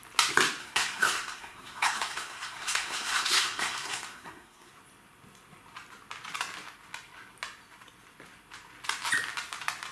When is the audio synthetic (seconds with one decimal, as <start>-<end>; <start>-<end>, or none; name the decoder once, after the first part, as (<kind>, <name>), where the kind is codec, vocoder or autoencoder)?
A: 0.6-4.7 (codec, SNAC)